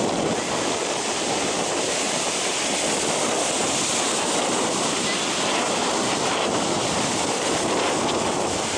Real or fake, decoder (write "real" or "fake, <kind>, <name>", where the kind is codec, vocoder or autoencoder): real